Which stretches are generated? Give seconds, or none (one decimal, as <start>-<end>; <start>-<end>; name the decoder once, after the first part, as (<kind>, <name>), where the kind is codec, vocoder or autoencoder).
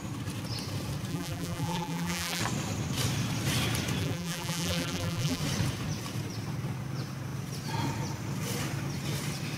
1.1-2.4 (vocoder, BigVGAN v2); 4.0-5.4